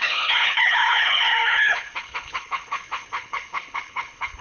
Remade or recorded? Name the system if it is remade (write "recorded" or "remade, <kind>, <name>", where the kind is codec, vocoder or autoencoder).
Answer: remade, codec, HILCodec